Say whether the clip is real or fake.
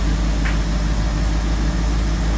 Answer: real